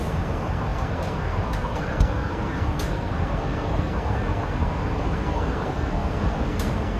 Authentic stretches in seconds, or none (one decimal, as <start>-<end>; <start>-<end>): none